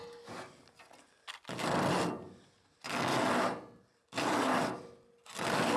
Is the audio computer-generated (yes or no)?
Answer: no